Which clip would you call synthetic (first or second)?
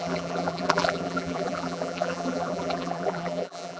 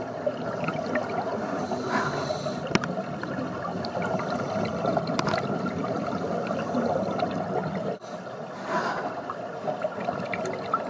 first